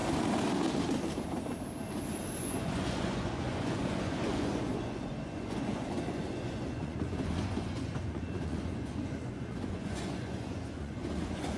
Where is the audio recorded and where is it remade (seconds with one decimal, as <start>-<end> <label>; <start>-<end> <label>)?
0.0-2.4 recorded; 2.4-11.6 remade